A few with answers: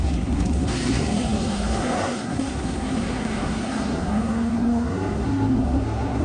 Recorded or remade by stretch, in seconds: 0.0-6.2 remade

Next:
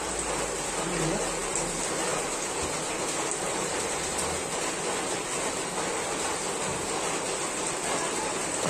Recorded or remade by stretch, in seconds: 0.0-8.7 recorded